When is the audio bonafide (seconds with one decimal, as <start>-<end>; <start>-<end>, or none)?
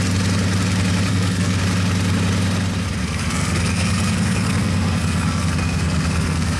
0.0-1.1; 1.6-3.0